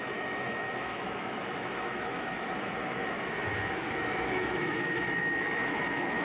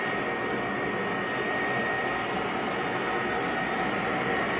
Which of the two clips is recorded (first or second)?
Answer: second